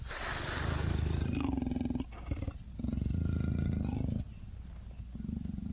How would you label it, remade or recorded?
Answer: recorded